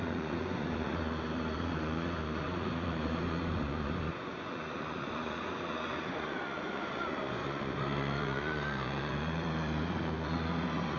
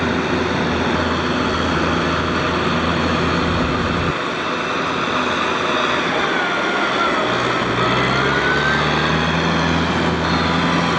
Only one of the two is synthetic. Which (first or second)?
first